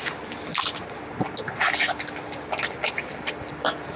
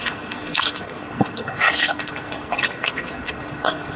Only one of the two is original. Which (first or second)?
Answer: first